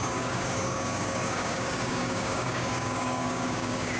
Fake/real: fake